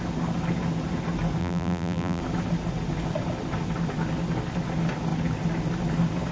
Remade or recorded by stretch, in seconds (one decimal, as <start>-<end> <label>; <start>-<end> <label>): 0.0-1.4 recorded; 1.4-2.2 remade; 2.2-6.3 recorded